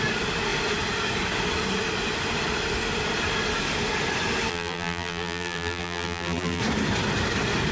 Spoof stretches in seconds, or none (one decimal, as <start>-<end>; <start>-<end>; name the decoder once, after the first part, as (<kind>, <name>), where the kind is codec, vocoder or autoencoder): 4.5-6.6 (vocoder, BigVGAN v2)